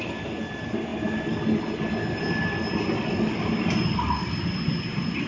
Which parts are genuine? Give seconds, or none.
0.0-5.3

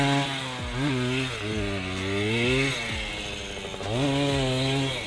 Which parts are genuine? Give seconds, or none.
0.0-5.1